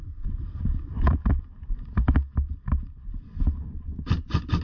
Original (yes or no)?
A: yes